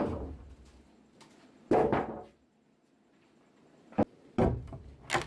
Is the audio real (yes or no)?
yes